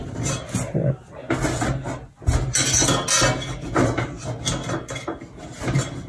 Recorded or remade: recorded